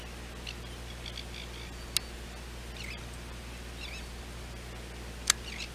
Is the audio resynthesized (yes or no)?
no